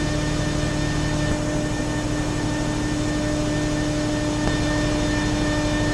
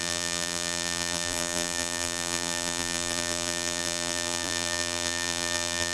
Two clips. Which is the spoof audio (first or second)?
second